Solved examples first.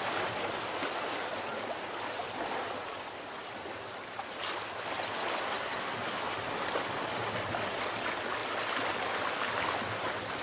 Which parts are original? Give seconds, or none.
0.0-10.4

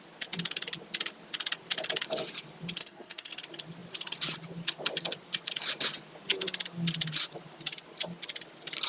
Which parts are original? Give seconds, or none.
0.0-2.8; 3.3-8.9

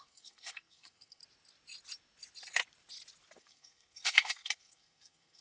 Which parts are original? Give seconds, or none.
1.2-3.4

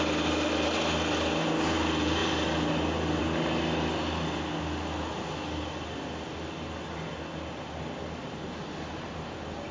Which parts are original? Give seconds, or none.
0.0-9.7

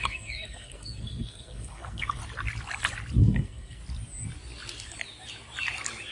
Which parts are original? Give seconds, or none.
2.2-3.2; 3.8-6.1

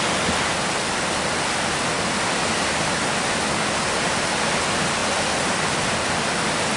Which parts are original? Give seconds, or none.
0.0-6.8

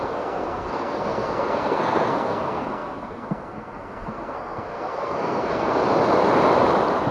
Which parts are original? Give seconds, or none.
5.8-7.1